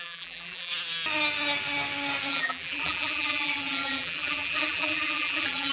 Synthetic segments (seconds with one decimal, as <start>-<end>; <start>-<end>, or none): 0.0-0.7; 2.3-5.7